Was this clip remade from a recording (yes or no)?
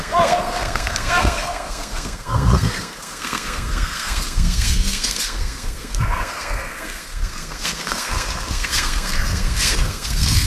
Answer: yes